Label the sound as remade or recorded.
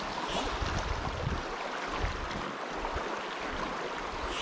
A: recorded